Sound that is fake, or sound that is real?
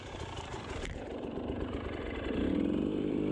fake